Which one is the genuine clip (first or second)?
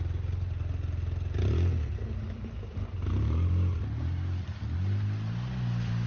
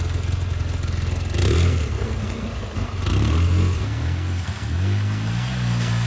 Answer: first